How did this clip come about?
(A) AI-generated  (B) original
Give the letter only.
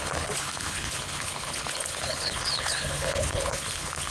A